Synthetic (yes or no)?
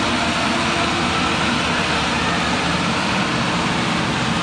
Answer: no